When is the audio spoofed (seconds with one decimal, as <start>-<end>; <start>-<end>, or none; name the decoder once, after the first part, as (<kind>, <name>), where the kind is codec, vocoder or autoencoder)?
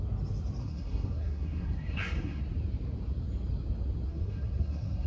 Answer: 0.6-2.4 (codec, SNAC); 4.1-5.1